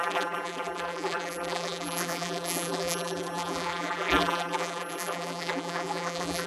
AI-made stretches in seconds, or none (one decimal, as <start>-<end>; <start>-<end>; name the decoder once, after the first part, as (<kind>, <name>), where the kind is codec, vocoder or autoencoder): 0.0-6.5 (vocoder, BigVGAN v2)